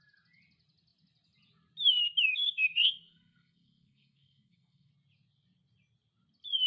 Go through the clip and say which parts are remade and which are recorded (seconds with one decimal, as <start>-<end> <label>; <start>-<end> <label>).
0.0-2.3 recorded; 2.3-4.9 remade; 4.9-6.7 recorded